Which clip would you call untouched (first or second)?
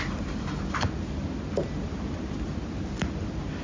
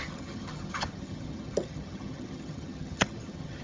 first